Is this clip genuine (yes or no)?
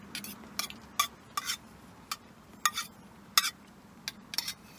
yes